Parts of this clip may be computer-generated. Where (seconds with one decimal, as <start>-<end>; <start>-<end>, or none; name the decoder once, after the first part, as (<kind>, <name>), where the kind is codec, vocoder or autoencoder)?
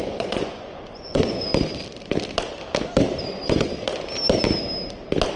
0.0-1.5 (vocoder, Vocos); 3.3-3.7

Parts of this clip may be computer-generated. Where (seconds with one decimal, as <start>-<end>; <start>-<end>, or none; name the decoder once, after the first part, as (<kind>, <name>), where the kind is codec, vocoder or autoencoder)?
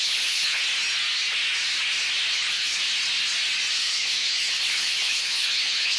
0.0-0.6 (codec, HILCodec); 2.3-2.8; 3.7-6.0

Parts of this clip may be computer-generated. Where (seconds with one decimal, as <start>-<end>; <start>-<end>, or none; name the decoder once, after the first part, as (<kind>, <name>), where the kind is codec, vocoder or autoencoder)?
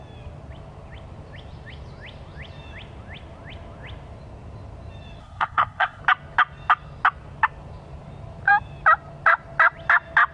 5.2-6.0 (codec, SNAC)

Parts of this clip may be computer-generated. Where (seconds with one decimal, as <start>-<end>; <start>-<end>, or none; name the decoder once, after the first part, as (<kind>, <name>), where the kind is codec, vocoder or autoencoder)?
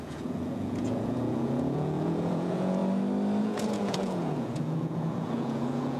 0.0-2.8 (vocoder, Vocos); 3.4-6.0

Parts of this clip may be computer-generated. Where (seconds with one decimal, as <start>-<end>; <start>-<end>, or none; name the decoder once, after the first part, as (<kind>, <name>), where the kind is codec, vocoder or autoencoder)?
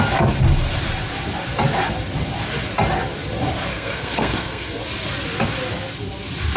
3.7-4.8 (codec, SNAC)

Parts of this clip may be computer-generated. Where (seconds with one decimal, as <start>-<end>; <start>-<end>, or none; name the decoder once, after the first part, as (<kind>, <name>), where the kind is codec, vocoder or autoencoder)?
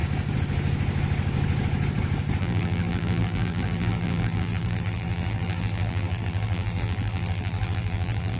2.4-8.4 (vocoder, BigVGAN v2)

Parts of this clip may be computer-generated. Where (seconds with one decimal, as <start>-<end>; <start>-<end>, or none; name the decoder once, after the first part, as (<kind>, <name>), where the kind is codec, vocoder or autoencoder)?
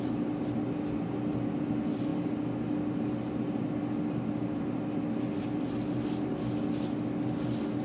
none